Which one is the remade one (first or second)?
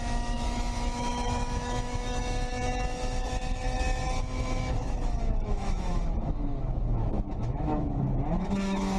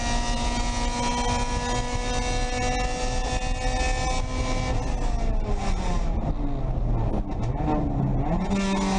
first